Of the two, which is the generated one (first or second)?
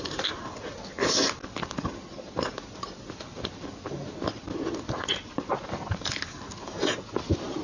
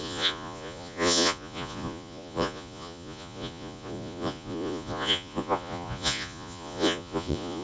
second